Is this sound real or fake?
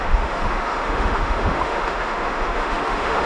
fake